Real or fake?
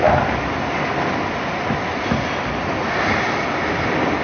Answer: real